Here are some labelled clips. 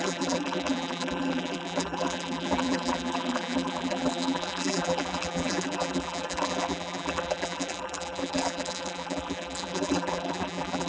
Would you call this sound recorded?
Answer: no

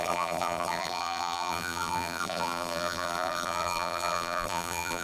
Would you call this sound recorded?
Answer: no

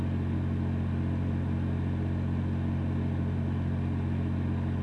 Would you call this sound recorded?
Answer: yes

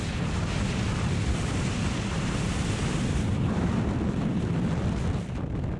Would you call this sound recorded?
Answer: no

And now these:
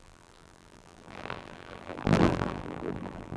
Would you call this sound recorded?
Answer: no